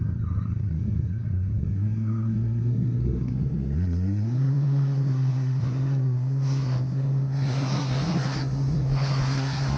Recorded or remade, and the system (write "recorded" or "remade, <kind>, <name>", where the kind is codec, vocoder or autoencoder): remade, codec, SNAC